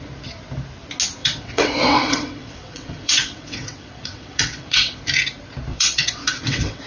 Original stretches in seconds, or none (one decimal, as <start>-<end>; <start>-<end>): 0.0-1.2; 5.0-5.7